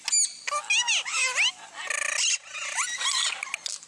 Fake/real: real